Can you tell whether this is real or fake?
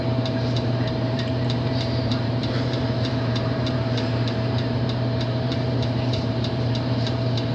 fake